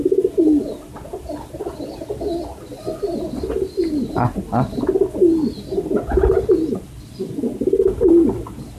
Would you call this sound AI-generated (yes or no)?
no